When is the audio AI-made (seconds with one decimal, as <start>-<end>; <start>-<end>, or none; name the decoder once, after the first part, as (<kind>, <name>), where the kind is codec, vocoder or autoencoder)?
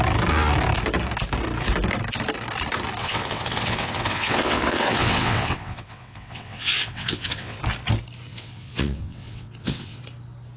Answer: 3.0-7.6 (vocoder, WaveNeXt); 8.3-10.0